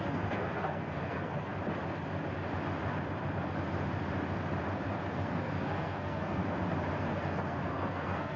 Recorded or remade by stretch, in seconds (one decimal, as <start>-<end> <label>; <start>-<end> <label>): 0.0-1.5 remade; 1.5-5.0 recorded; 5.0-6.4 remade; 6.4-7.0 recorded; 7.0-8.4 remade